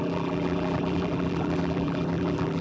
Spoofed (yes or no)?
yes